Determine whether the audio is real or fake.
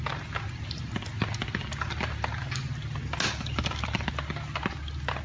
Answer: real